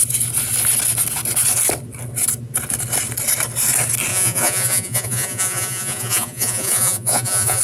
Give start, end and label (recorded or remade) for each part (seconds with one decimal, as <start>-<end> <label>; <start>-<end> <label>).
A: 0.0-4.1 recorded; 4.1-7.6 remade